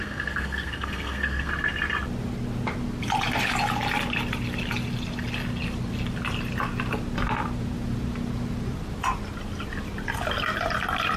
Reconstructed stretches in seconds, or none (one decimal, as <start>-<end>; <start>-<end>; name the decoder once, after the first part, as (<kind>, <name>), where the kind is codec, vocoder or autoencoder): 0.0-1.5 (codec, SNAC)